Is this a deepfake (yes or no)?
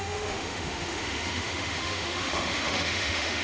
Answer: yes